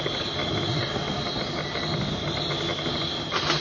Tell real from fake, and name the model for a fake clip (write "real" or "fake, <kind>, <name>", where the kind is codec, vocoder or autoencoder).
real